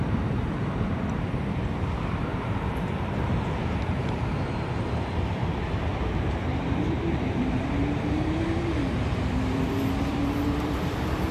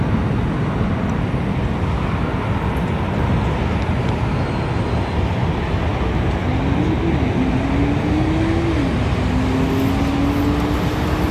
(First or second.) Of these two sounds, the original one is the second